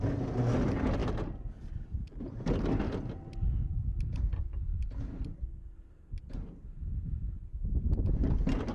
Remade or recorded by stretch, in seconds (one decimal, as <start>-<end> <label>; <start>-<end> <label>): 0.0-8.7 recorded